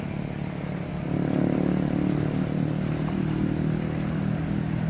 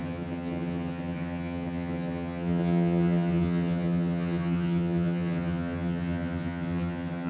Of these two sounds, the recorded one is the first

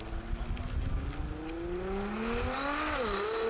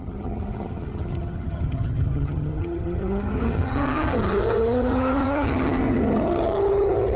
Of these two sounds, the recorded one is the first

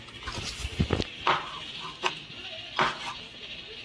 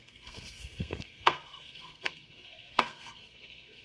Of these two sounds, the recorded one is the first